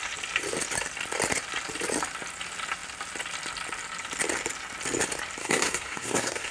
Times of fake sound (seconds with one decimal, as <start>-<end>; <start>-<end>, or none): 5.4-6.5